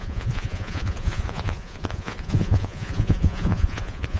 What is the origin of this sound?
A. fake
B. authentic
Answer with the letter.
A